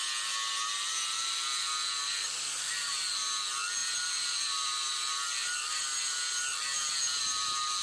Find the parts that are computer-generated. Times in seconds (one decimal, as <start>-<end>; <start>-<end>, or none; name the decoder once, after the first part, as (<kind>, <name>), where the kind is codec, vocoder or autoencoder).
3.8-5.8 (vocoder, BigVGAN v2)